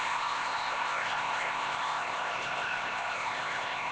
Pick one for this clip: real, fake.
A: fake